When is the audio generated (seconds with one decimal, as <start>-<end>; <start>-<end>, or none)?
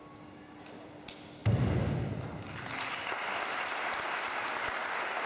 none